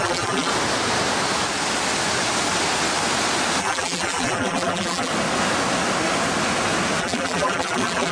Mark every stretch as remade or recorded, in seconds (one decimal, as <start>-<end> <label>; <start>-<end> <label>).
0.0-0.5 remade; 0.5-3.6 recorded; 3.6-5.1 remade; 5.1-7.0 recorded; 7.0-8.1 remade